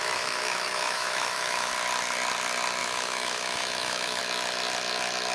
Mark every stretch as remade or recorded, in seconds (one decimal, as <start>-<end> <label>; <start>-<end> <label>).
0.0-1.7 remade; 1.7-2.8 recorded; 2.8-4.2 remade; 4.2-5.3 recorded